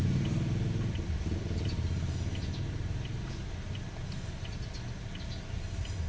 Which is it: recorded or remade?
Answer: recorded